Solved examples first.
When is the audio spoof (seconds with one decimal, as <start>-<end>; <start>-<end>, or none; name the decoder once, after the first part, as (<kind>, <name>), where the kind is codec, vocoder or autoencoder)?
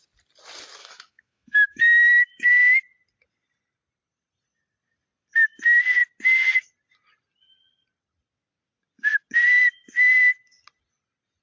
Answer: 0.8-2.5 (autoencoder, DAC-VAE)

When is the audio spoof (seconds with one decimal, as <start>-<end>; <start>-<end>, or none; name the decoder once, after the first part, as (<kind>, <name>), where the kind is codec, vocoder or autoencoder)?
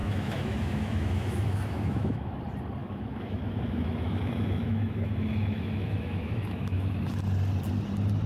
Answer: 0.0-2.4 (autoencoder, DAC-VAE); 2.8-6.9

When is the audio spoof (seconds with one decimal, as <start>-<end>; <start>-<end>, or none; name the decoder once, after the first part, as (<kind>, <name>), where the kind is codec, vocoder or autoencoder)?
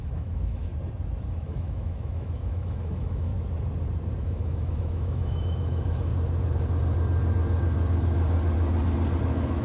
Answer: 0.0-0.7 (autoencoder, DAC-VAE); 1.3-3.3; 4.2-6.1; 9.2-9.6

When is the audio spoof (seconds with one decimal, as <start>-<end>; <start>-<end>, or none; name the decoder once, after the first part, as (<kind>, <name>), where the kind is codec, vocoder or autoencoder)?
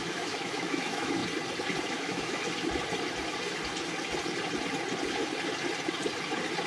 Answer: 0.0-1.2 (autoencoder, DAC-VAE); 1.9-2.4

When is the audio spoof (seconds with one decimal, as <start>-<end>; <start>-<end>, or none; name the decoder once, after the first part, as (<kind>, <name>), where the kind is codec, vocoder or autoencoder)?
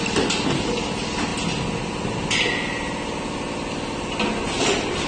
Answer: none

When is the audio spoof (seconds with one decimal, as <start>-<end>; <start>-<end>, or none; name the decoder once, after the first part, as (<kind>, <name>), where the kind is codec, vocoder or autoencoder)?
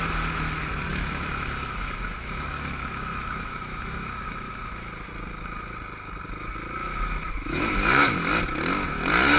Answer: 0.9-5.1 (autoencoder, DAC-VAE); 6.8-8.4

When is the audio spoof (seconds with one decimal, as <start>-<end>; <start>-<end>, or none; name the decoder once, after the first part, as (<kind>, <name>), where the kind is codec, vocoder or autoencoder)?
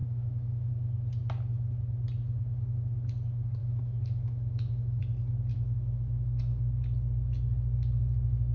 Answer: 0.0-0.7 (autoencoder, DAC-VAE); 3.6-5.0; 5.5-6.4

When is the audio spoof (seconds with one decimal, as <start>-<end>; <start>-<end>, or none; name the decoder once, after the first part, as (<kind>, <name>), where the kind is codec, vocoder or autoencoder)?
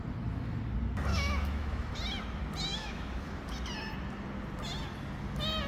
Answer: 1.1-1.9 (autoencoder, DAC-VAE); 2.7-3.4